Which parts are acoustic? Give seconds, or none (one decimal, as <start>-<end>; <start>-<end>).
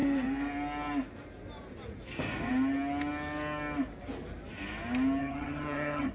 0.0-5.2